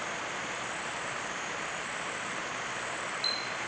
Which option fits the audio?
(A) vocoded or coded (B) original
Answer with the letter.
B